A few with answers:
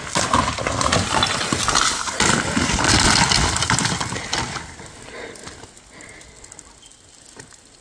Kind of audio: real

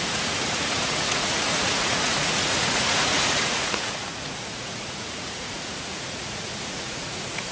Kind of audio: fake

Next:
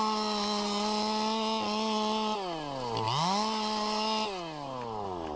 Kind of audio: real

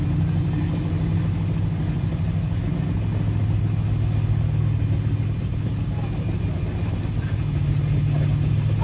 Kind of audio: real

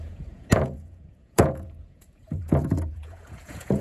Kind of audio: fake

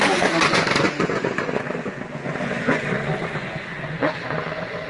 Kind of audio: fake